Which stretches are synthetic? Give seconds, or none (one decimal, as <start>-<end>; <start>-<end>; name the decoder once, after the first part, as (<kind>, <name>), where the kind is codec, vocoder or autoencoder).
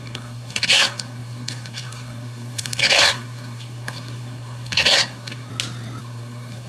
0.0-5.5 (codec, SNAC); 6.0-6.7